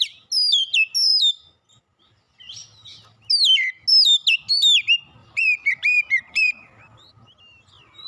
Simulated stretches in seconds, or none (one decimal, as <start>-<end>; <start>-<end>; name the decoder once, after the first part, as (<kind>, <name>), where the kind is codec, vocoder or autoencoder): 5.2-7.1 (vocoder, BigVGAN v2)